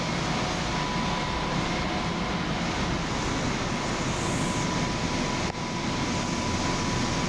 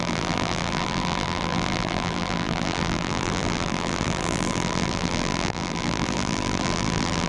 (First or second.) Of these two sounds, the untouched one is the first